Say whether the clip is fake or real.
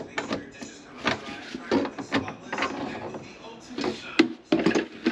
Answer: real